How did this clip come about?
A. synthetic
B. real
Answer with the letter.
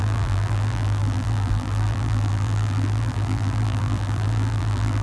A